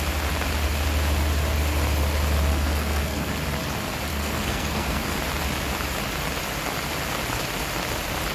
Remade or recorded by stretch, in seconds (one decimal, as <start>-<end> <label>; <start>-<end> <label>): 0.0-2.5 recorded; 2.5-3.3 remade; 3.3-4.1 recorded; 4.1-5.2 remade; 5.2-8.3 recorded